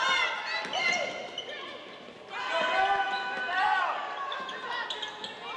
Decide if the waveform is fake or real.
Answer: real